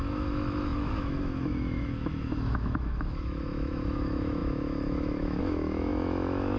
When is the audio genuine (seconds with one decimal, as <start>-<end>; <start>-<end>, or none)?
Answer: none